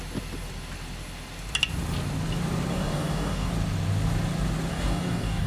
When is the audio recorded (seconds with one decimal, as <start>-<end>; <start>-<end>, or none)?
0.0-2.7; 3.5-4.7